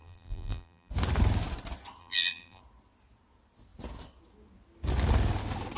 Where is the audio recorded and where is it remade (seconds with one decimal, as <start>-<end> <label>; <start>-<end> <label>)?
0.0-0.9 remade; 0.9-2.0 recorded; 2.0-2.6 remade; 2.6-5.8 recorded